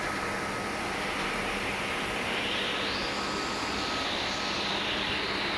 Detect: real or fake real